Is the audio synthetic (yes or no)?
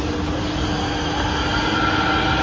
no